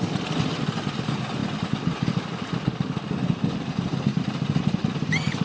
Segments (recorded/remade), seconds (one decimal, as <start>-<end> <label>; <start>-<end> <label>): 0.0-5.4 recorded